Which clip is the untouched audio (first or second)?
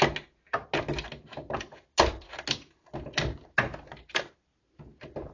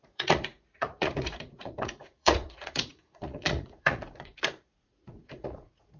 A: first